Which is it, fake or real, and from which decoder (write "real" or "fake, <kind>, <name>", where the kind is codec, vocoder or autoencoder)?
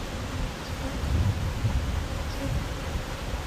real